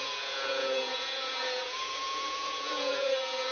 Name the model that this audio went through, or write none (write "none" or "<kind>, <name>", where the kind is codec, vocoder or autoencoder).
vocoder, Vocos